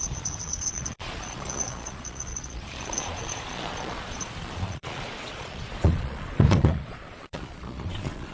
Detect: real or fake fake